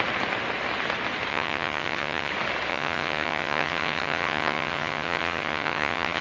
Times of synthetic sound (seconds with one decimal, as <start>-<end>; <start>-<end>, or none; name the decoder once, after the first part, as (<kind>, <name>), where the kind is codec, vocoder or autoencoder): 1.3-2.3 (vocoder, HiFi-GAN); 2.7-6.2